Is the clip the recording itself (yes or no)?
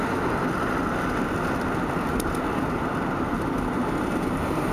yes